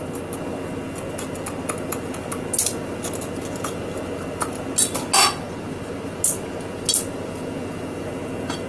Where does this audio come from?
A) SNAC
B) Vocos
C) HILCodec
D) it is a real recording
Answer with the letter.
D